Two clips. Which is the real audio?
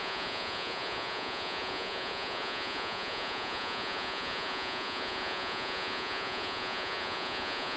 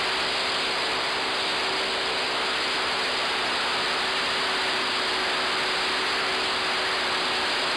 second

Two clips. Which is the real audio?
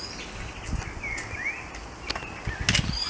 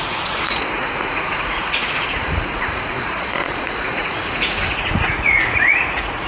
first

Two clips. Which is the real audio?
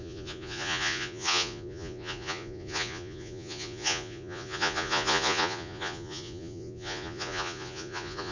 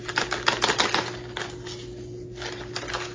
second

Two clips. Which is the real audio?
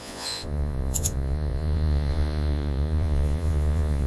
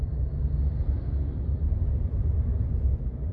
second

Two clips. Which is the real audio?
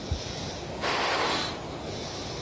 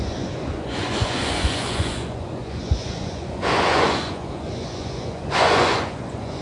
first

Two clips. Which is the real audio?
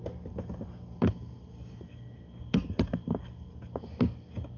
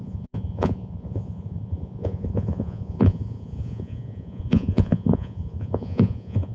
first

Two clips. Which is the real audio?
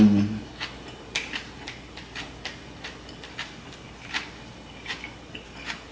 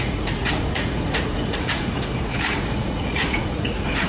first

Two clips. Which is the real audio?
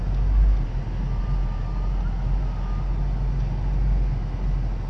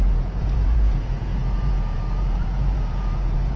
first